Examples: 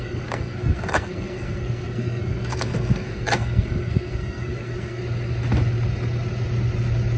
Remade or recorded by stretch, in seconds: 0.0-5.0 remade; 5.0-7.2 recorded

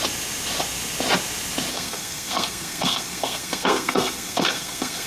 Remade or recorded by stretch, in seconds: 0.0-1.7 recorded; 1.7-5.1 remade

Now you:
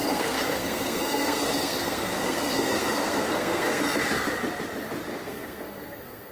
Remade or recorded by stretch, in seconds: 0.0-3.8 remade; 3.8-5.1 recorded; 5.1-6.3 remade

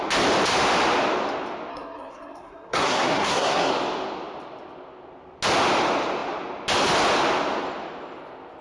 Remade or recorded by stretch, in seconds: 0.0-1.7 recorded; 1.7-3.7 remade; 3.7-8.6 recorded

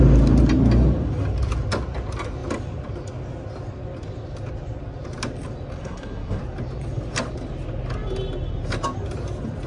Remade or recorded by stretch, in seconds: 0.0-5.8 recorded; 5.8-6.4 remade; 6.4-9.7 recorded

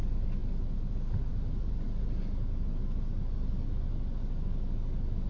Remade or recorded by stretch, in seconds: 0.0-5.3 recorded

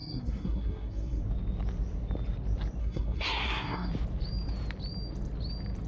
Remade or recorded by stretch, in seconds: 0.0-1.2 remade; 1.2-2.8 recorded; 2.8-3.9 remade; 3.9-5.9 recorded

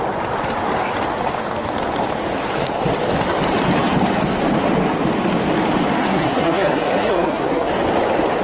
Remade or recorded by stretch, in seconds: 0.0-6.0 recorded; 6.0-7.7 remade; 7.7-8.4 recorded